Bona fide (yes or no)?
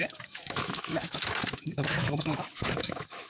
no